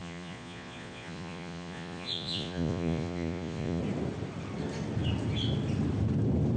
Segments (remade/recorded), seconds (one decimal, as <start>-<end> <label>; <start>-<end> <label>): 0.0-3.8 remade; 3.8-6.6 recorded

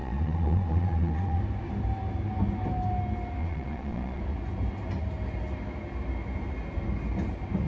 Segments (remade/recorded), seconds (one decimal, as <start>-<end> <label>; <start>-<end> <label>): 0.0-1.4 remade; 1.4-3.4 recorded; 3.4-4.2 remade; 4.2-7.7 recorded

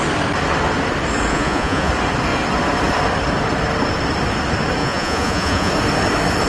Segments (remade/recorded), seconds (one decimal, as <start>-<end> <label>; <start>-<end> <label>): 0.0-1.3 recorded; 1.3-1.9 remade; 1.9-4.8 recorded; 4.8-5.7 remade; 5.7-6.5 recorded

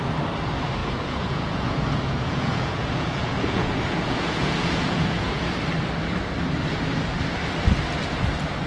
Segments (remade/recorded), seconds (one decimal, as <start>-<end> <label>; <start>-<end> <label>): 0.0-0.8 recorded; 0.8-5.5 remade; 5.5-8.7 recorded

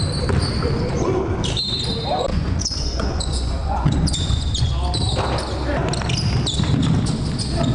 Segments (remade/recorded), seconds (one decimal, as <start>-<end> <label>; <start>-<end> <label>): 0.0-2.3 recorded; 2.3-4.7 remade; 4.7-7.7 recorded

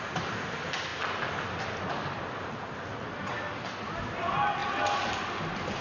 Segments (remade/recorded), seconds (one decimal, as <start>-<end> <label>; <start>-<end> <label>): 0.0-5.8 recorded

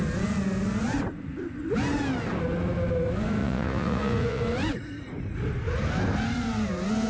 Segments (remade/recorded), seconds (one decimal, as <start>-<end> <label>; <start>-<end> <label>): 0.0-3.4 recorded; 3.4-4.4 remade; 4.4-7.1 recorded